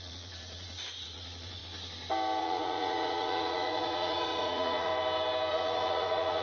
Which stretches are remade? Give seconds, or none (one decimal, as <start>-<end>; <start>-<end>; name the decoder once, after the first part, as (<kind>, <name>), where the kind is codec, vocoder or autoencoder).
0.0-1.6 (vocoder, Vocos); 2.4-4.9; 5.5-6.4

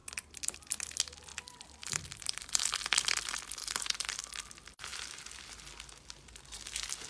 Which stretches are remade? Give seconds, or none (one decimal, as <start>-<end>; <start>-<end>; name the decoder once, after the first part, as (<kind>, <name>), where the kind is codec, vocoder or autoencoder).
1.3-2.8 (vocoder, BigVGAN v2); 3.6-4.1

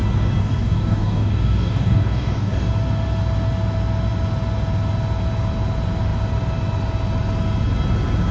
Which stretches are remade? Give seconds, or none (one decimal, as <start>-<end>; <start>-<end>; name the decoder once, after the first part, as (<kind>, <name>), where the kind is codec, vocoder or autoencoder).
0.4-2.7 (codec, DAC)

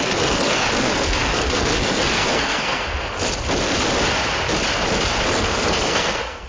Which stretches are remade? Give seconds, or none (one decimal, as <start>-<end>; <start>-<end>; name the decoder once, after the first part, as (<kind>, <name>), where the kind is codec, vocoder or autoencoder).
0.0-2.9 (codec, SNAC); 5.4-6.5